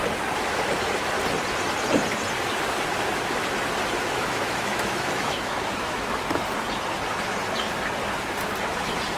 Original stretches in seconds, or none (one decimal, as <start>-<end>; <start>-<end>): 0.0-4.0; 6.1-9.2